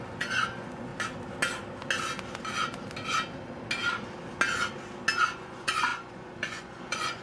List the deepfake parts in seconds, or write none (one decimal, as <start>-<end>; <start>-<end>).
0.0-0.9; 5.2-7.2

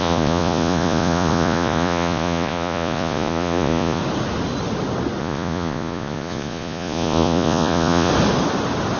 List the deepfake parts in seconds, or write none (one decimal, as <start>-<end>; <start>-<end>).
0.0-4.0; 5.2-8.1

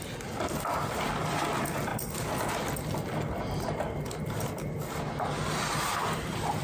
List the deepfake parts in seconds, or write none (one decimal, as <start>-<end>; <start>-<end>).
0.0-1.9; 5.8-6.6

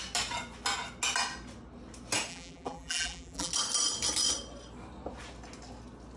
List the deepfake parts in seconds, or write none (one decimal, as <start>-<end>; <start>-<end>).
2.3-3.5

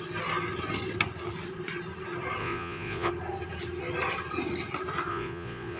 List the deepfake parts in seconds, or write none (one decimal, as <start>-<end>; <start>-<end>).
2.4-3.1; 5.1-5.8

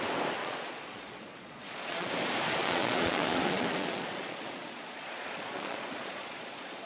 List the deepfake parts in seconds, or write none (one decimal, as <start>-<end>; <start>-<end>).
0.4-2.1; 2.6-6.9

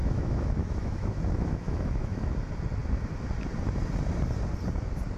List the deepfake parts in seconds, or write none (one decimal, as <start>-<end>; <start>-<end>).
0.0-2.3

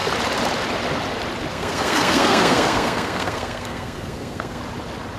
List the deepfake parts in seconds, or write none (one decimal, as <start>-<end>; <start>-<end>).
1.5-4.6